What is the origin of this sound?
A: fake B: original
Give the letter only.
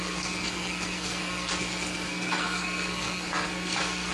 A